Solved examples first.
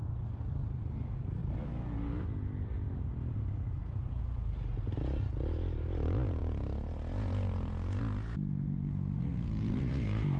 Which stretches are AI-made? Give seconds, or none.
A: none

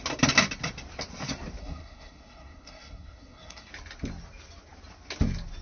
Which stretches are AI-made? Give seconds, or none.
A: 1.6-3.7 (codec, SNAC)

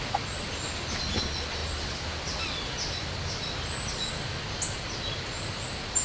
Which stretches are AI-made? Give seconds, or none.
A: none

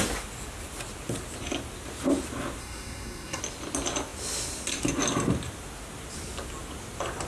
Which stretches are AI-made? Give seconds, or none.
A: 2.6-3.4 (codec, SNAC)

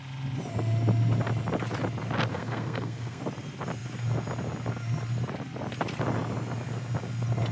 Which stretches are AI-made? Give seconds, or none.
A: 2.3-3.2 (codec, SNAC)

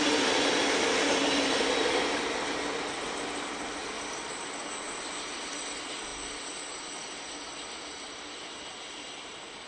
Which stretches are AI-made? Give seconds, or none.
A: none

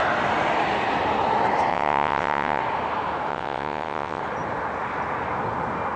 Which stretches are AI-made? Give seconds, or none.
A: 1.7-2.6 (vocoder, WaveNeXt); 3.3-4.2